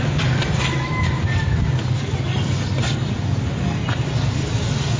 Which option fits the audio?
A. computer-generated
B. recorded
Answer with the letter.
B